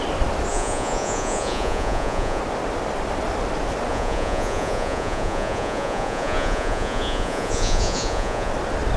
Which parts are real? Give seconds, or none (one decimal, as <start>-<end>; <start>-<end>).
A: 0.0-0.5; 2.4-3.9; 8.5-9.0